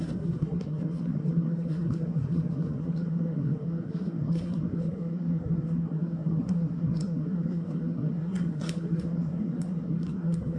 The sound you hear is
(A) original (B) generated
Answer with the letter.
B